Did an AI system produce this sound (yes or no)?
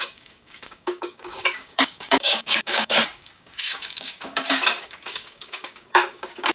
yes